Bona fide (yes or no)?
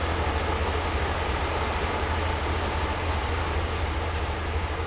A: yes